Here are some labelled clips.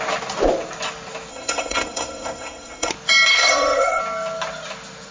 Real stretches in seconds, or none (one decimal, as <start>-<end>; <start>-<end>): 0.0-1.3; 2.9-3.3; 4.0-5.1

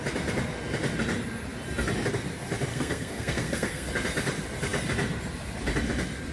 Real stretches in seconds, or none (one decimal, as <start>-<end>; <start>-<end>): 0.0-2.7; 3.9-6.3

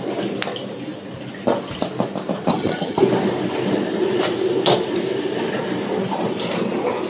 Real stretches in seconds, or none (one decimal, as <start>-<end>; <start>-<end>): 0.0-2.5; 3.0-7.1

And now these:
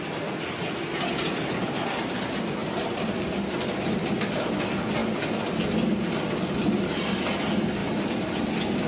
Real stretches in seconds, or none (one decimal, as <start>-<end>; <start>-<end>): 0.0-8.9